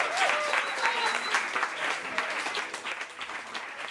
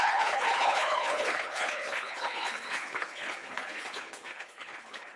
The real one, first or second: first